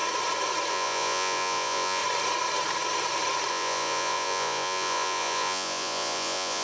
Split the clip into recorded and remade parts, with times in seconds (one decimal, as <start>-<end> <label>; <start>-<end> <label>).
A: 0.0-0.7 recorded; 0.7-2.0 remade; 2.0-3.5 recorded; 3.5-6.6 remade